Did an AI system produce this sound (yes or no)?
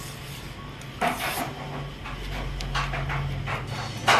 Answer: no